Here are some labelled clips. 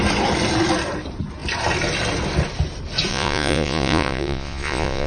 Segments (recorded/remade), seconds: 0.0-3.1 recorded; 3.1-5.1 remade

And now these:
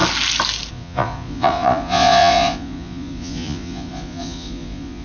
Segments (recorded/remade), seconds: 0.0-0.7 recorded; 0.7-5.0 remade

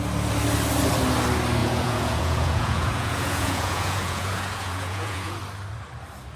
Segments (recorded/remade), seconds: 0.0-1.6 recorded; 1.6-5.4 remade; 5.4-6.4 recorded